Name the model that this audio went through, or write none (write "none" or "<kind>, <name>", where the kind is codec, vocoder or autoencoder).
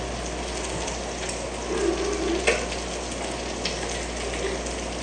none